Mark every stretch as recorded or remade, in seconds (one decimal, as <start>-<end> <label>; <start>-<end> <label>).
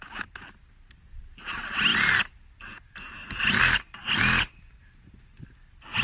0.0-6.0 recorded